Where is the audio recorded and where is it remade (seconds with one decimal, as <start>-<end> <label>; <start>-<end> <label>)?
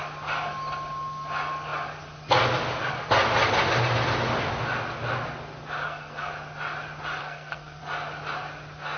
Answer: 0.0-5.8 recorded; 5.8-6.3 remade; 6.3-7.2 recorded; 7.2-7.8 remade; 7.8-9.0 recorded